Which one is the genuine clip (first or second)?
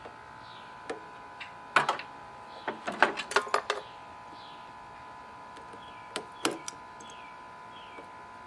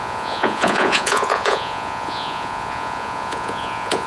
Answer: first